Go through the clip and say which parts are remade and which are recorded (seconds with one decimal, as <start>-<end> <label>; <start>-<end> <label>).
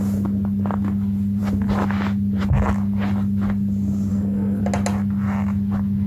0.0-4.1 recorded; 4.1-4.6 remade; 4.6-6.1 recorded